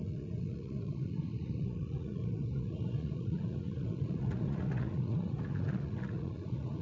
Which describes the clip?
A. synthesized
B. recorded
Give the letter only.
A